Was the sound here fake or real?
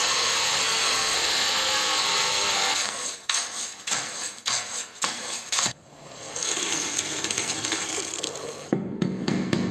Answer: fake